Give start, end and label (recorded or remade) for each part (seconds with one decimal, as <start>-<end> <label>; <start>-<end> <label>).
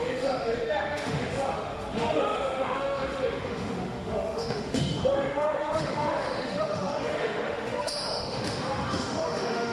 0.0-9.7 remade